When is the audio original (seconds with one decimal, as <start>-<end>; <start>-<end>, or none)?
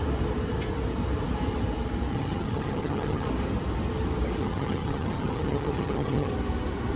0.0-2.1; 3.3-4.4; 6.3-7.0